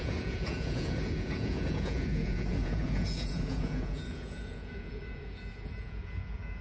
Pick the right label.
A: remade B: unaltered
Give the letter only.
A